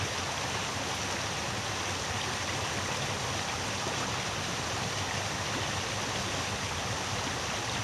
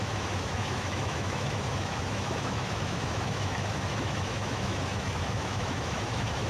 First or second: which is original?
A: first